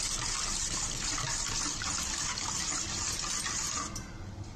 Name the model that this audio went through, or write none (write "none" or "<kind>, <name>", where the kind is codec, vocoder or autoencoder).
none